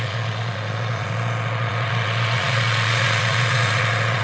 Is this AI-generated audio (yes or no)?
yes